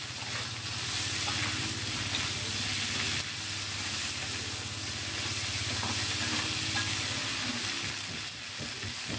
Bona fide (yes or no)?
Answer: yes